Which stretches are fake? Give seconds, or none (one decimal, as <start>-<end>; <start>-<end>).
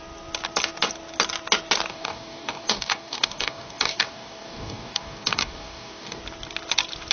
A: 1.9-6.2